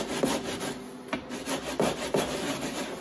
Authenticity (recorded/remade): recorded